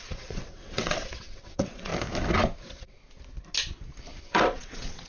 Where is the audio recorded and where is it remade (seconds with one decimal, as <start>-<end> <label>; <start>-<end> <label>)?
0.0-1.9 remade; 1.9-2.6 recorded; 2.6-3.0 remade; 3.0-4.2 recorded; 4.2-5.1 remade